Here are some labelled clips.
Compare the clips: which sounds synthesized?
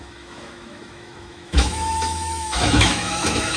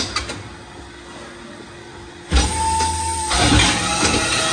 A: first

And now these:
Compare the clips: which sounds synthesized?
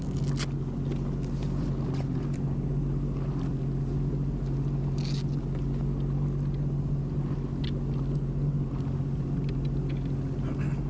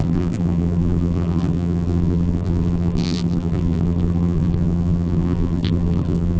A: second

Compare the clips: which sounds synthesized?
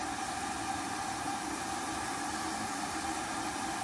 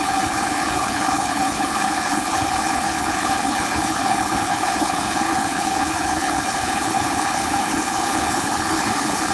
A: second